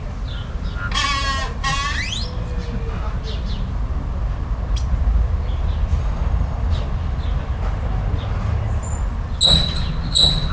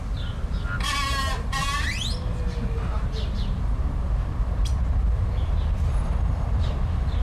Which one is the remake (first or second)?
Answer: second